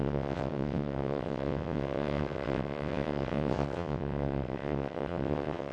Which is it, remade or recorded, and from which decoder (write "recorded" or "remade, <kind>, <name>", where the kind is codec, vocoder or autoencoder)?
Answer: remade, vocoder, WaveNeXt